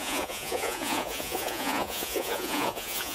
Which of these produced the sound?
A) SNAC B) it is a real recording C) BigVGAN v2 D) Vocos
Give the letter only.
D